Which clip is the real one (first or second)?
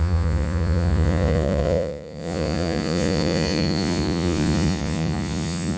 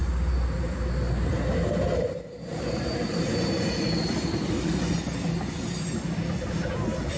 second